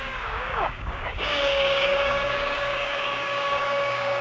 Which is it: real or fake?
fake